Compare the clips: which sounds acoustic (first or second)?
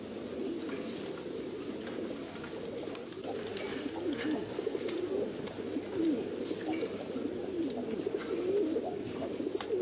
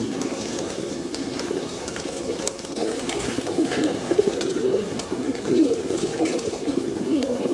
first